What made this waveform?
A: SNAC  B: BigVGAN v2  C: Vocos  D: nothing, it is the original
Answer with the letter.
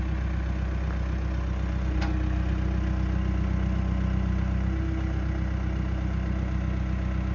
D